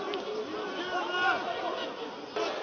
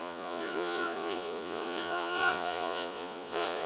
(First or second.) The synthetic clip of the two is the second